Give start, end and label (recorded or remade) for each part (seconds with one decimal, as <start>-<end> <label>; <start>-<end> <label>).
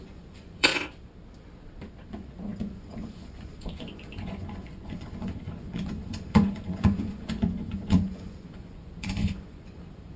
0.0-0.7 remade; 0.7-2.1 recorded; 2.1-10.2 remade